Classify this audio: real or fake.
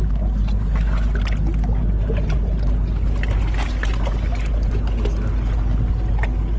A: real